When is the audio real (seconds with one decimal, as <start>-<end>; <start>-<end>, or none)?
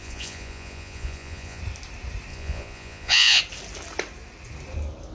1.6-2.3; 3.4-5.1